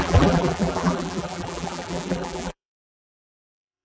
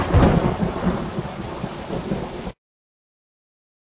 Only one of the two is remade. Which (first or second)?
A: first